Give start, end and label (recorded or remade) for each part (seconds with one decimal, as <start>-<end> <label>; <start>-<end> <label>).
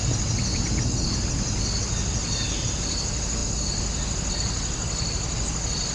0.0-5.9 recorded